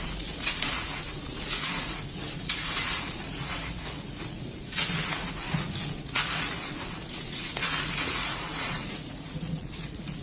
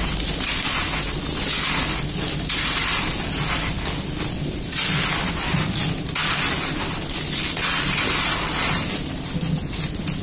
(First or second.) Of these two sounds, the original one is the second